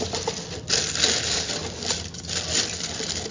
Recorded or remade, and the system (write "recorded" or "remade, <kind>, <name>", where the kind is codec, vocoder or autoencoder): remade, vocoder, BigVGAN v2